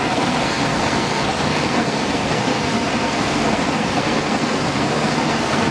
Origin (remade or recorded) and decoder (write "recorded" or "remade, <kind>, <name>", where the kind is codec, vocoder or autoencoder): remade, codec, SNAC